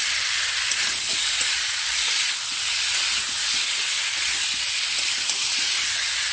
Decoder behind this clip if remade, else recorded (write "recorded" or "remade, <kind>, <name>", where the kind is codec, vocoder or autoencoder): recorded